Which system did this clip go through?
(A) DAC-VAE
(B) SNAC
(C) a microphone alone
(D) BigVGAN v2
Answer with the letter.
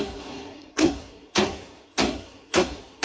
B